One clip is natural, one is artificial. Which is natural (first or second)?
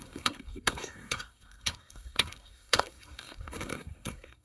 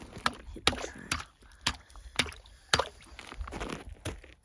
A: second